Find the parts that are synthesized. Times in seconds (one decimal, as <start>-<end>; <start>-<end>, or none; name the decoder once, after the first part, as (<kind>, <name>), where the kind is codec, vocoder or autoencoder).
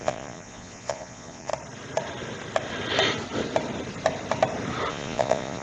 0.0-1.5 (vocoder, Vocos); 4.9-5.6